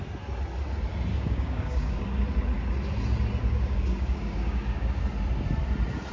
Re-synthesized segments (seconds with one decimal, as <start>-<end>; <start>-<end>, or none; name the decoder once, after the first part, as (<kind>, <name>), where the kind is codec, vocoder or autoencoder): 1.1-2.0 (codec, DAC); 3.4-5.0